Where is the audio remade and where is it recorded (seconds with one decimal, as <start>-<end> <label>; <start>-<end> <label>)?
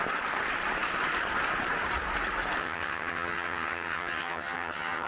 0.0-2.6 recorded; 2.6-5.1 remade